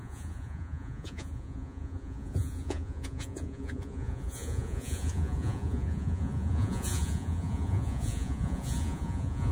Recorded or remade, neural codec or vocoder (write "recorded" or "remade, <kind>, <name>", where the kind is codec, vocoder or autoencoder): remade, vocoder, Vocos